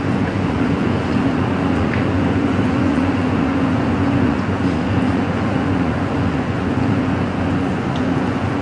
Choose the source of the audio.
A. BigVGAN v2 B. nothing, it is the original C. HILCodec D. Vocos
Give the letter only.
D